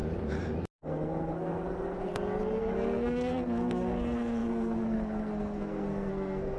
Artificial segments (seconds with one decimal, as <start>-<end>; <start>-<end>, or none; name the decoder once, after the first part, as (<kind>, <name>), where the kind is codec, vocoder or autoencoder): 0.7-2.1 (codec, SNAC); 2.6-6.6